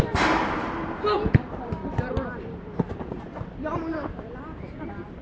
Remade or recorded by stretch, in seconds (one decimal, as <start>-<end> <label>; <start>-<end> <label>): 0.0-1.8 remade; 1.8-4.4 recorded; 4.4-5.2 remade